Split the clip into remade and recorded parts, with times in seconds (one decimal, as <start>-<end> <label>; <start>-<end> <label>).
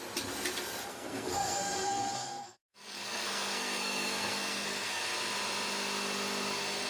0.0-0.9 recorded; 0.9-5.0 remade; 5.0-6.9 recorded